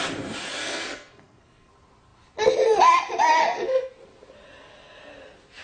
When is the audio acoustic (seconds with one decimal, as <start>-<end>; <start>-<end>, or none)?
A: 0.0-0.6; 1.7-3.4; 3.9-5.6